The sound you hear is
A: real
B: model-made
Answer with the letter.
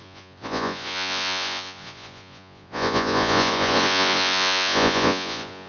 B